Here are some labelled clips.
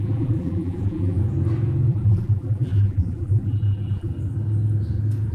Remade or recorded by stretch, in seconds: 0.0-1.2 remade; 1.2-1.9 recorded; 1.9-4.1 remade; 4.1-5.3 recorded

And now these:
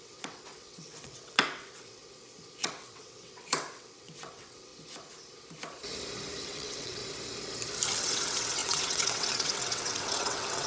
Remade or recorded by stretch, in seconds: 0.0-2.0 remade; 2.0-2.6 recorded; 2.6-4.7 remade; 4.7-6.4 recorded; 6.4-7.0 remade; 7.0-8.0 recorded; 8.0-10.7 remade

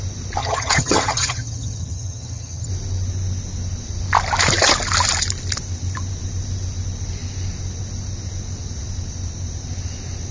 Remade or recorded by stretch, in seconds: 0.0-0.4 recorded; 0.4-2.7 remade; 2.7-10.3 recorded

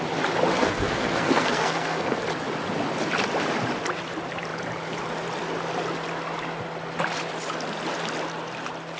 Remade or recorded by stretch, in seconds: 0.0-0.6 recorded; 0.6-2.2 remade; 2.2-9.0 recorded

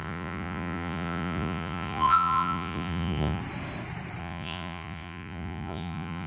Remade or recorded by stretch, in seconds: 0.0-3.4 remade; 3.4-4.2 recorded; 4.2-6.3 remade

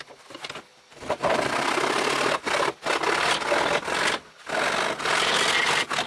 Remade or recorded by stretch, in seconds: 0.0-0.7 recorded; 0.7-3.3 remade; 3.3-6.1 recorded

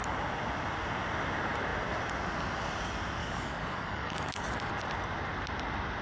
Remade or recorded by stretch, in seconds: 0.0-3.2 recorded; 3.2-4.7 remade; 4.7-6.0 recorded